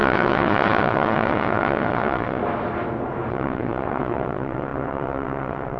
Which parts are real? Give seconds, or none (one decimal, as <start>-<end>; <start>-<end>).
2.4-3.3